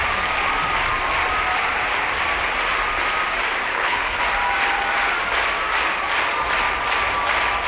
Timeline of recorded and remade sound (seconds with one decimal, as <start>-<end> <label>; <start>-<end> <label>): 0.0-3.6 recorded; 3.6-4.2 remade; 4.2-7.7 recorded